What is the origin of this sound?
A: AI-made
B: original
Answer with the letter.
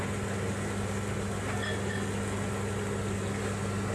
B